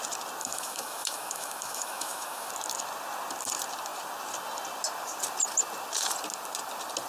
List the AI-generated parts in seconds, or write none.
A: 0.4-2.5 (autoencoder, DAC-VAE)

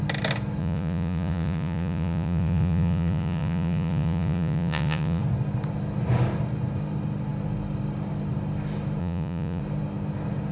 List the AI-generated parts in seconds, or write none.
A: 0.6-5.2 (vocoder, Vocos); 9.0-9.6